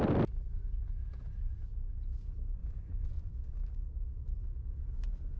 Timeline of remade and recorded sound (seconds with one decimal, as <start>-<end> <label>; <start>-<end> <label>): 0.0-2.6 recorded; 2.6-3.3 remade; 3.3-5.4 recorded